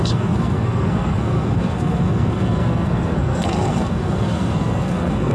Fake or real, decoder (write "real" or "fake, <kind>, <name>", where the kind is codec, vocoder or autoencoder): fake, codec, SNAC